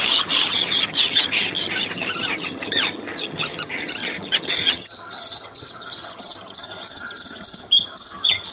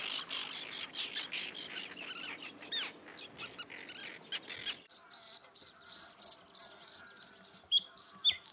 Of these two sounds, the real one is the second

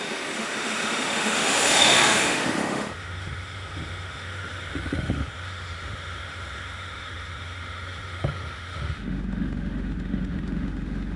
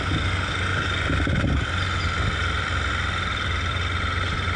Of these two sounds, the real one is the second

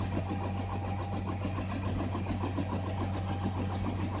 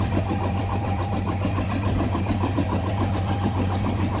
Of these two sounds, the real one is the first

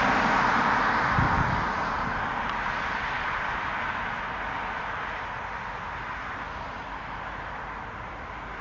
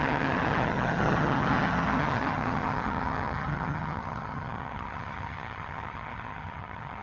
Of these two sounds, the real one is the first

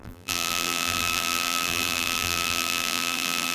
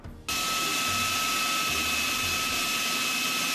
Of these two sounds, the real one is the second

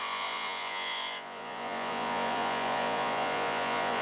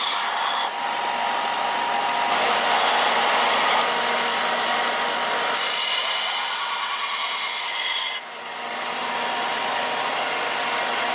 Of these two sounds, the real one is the second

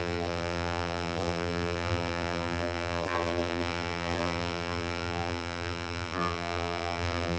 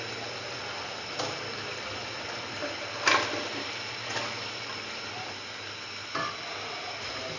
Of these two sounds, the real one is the second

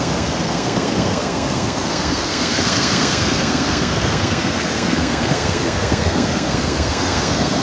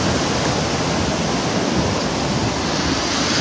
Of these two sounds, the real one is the second